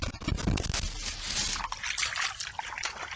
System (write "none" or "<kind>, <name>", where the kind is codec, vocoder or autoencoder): none